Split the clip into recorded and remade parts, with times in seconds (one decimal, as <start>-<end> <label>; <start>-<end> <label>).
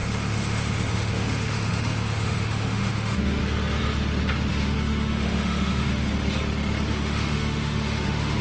0.0-3.4 remade; 3.4-4.5 recorded; 4.5-6.1 remade; 6.1-6.9 recorded; 6.9-8.4 remade